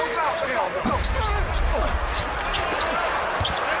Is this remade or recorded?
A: recorded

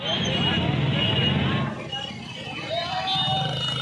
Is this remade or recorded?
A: recorded